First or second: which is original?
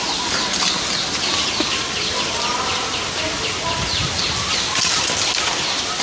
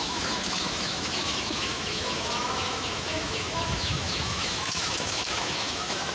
first